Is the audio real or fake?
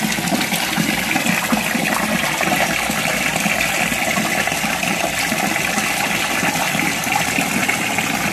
real